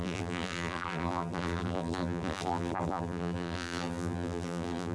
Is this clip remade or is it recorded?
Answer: remade